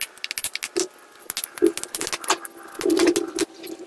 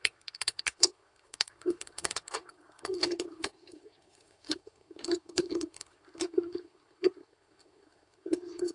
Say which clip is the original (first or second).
first